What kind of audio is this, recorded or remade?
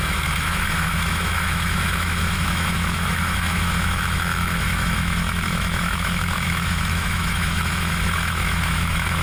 remade